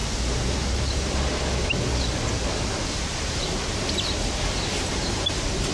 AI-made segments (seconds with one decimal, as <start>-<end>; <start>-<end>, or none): none